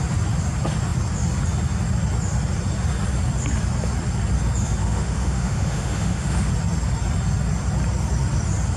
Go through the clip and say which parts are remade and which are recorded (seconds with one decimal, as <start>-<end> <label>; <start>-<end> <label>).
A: 0.0-4.8 recorded; 4.8-6.5 remade; 6.5-8.8 recorded